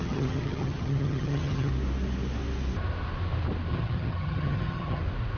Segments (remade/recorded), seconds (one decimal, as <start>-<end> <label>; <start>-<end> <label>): 0.0-1.7 remade; 1.7-3.7 recorded; 3.7-5.0 remade; 5.0-5.4 recorded